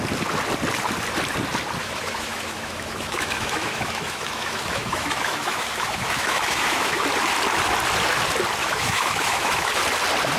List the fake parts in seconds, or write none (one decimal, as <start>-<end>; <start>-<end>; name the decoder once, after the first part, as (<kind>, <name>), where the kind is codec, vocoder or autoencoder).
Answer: 1.8-7.0 (autoencoder, DAC-VAE); 8.6-9.8